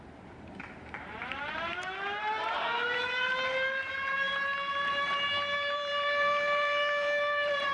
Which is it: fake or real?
fake